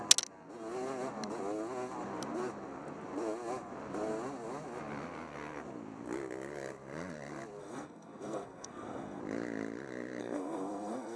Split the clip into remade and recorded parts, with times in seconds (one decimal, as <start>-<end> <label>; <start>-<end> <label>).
0.0-7.6 recorded; 7.6-9.2 remade; 9.2-10.2 recorded; 10.2-11.2 remade